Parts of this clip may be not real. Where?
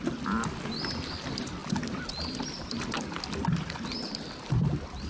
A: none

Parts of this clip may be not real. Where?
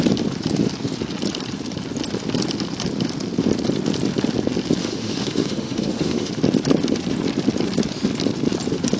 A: 4.8-6.3 (autoencoder, DAC-VAE)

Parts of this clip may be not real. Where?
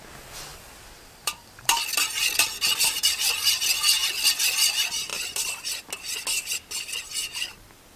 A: 0.5-3.5 (vocoder, BigVGAN v2); 4.0-4.5; 5.1-5.9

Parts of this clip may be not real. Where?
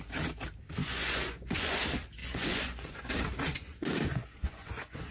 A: 0.8-1.8 (vocoder, Vocos); 2.2-3.1; 3.5-5.1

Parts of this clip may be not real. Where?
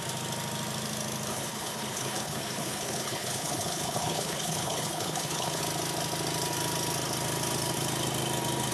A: 1.3-5.6 (codec, HILCodec)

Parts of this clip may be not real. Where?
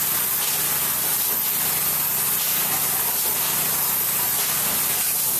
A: none